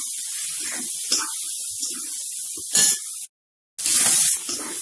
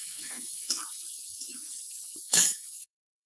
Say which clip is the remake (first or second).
second